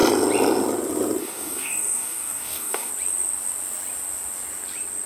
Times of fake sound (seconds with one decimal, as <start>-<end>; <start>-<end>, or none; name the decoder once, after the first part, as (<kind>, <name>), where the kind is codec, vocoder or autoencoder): 1.2-2.9 (codec, DAC)